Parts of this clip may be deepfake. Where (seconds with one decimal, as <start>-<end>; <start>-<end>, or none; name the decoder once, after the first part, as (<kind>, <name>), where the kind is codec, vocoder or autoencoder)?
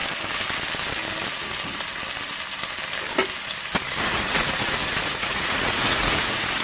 4.0-6.6 (vocoder, Vocos)